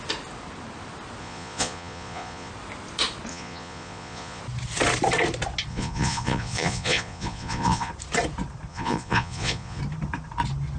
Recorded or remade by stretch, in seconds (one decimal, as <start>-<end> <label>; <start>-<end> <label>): 0.0-1.2 recorded; 1.2-2.5 remade; 2.5-3.3 recorded; 3.3-4.4 remade; 4.4-5.7 recorded; 5.7-7.9 remade; 7.9-8.7 recorded; 8.7-9.8 remade; 9.8-10.8 recorded